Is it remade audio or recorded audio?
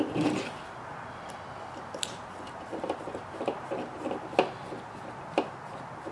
recorded